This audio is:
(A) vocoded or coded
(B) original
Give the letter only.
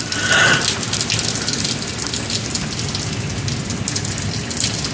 B